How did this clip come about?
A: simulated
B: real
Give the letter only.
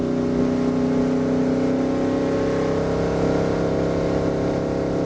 B